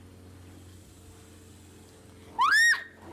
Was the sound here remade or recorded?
recorded